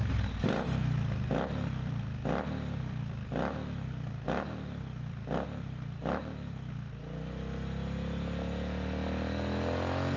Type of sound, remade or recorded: recorded